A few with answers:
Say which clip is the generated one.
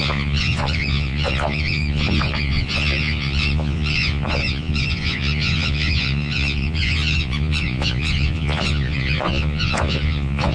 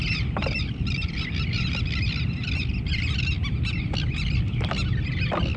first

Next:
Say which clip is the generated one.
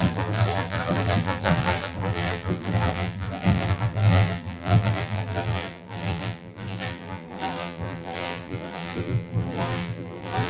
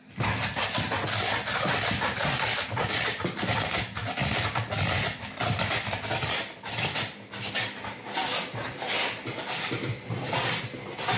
first